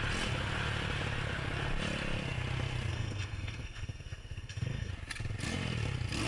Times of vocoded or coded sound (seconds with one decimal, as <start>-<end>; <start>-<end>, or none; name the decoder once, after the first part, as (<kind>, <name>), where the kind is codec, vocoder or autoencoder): 2.9-4.9 (codec, SNAC)